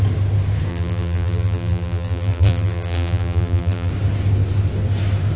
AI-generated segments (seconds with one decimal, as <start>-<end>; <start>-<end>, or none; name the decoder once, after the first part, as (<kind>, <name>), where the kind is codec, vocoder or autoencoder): 0.7-3.9 (vocoder, BigVGAN v2)